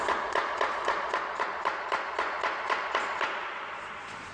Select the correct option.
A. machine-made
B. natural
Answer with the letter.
A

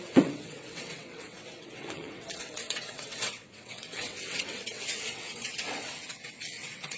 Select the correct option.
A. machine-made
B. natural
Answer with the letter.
A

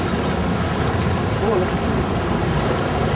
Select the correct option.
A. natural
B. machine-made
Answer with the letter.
A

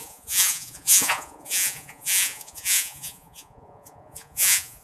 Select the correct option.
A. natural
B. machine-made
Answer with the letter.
B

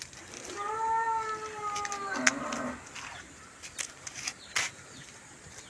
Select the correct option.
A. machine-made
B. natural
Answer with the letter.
B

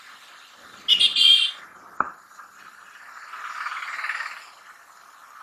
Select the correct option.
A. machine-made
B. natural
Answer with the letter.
B